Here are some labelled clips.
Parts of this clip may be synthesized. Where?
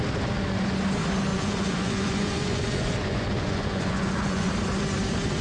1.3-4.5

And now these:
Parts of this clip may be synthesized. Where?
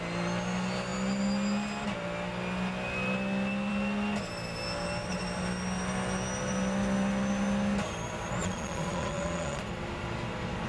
8.4-9.6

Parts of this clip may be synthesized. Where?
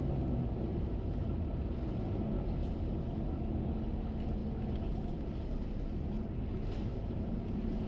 0.7-1.6; 6.9-7.9